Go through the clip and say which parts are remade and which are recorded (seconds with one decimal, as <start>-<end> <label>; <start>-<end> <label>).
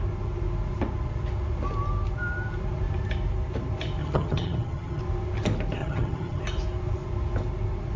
0.0-4.0 recorded; 4.0-5.0 remade; 5.0-5.8 recorded; 5.8-6.4 remade; 6.4-8.0 recorded